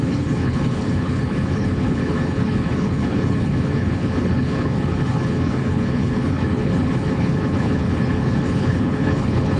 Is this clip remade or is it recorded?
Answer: remade